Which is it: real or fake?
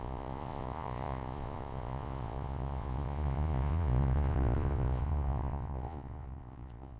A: fake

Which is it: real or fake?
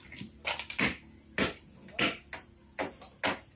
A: real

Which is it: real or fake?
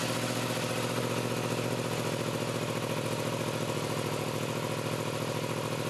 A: real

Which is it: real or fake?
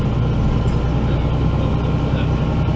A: real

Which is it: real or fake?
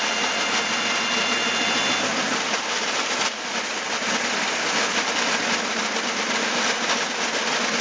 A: real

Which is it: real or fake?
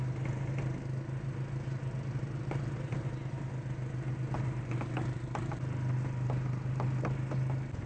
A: real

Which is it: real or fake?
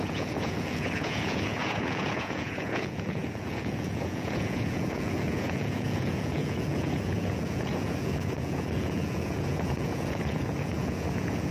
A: fake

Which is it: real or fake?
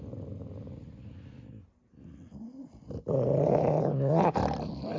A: real